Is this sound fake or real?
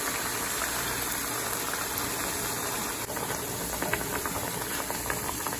real